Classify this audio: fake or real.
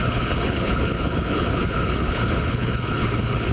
fake